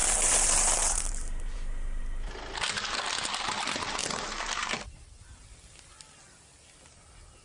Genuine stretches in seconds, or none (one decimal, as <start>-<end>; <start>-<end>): 2.0-7.4